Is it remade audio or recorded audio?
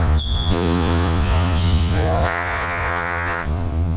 remade